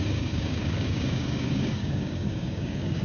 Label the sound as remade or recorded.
remade